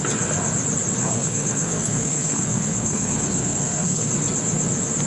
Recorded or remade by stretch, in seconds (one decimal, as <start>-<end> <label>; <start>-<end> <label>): 0.0-1.0 recorded; 1.0-4.1 remade; 4.1-5.1 recorded